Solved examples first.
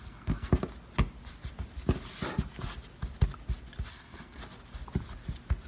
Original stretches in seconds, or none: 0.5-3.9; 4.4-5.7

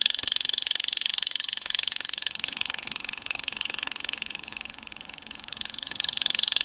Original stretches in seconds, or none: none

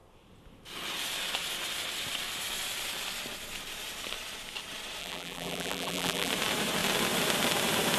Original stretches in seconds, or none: 0.0-5.0; 6.3-8.0

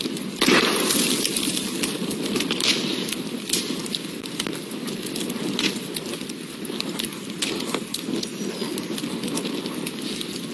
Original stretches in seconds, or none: 0.0-10.5

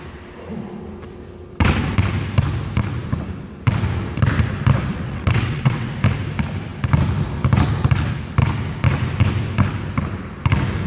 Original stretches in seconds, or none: 0.0-4.9; 5.9-10.9

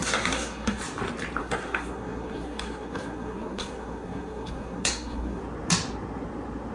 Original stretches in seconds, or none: 0.8-1.4; 5.4-6.7

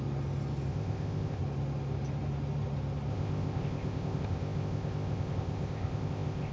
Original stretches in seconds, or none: 0.0-0.7; 1.4-3.1

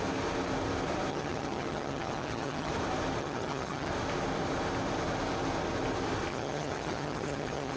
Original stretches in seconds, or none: 0.0-1.1; 2.7-3.2; 3.9-6.3